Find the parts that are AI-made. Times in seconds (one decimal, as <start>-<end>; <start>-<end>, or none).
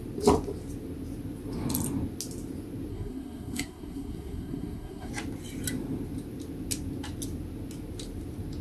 2.9-5.1